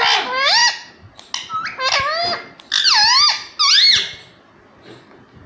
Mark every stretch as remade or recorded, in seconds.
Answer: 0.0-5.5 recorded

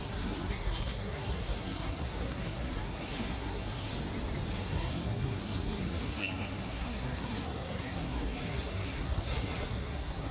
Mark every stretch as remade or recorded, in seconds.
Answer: 0.0-3.9 remade; 3.9-4.6 recorded; 4.6-10.3 remade